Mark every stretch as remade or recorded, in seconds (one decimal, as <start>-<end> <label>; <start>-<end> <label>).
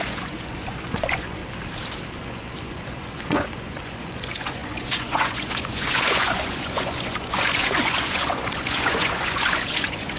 0.0-1.4 remade; 1.4-2.1 recorded; 2.1-10.2 remade